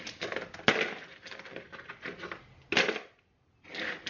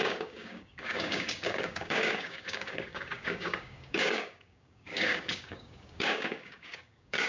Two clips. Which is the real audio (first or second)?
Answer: first